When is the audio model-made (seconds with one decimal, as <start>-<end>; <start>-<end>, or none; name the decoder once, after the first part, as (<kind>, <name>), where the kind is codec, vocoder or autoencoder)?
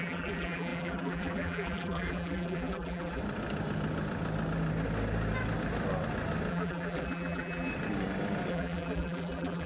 0.0-3.2 (vocoder, BigVGAN v2); 6.5-7.7; 8.5-9.7